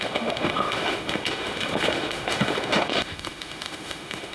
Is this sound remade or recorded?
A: remade